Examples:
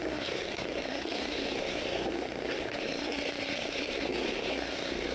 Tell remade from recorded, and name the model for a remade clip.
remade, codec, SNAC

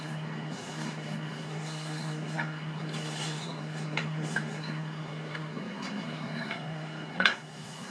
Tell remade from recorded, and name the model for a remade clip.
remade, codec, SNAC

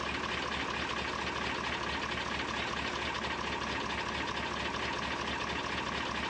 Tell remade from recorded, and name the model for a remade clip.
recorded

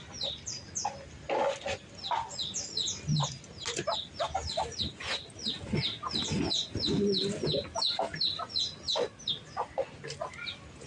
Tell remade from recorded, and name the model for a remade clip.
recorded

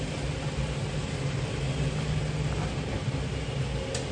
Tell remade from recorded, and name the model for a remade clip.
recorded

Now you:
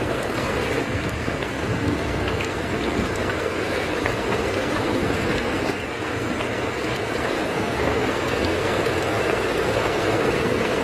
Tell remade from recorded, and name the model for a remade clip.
remade, codec, SNAC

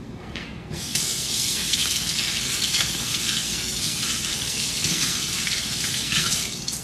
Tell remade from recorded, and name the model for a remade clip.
remade, codec, SNAC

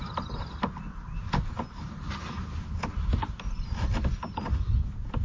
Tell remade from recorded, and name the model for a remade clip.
recorded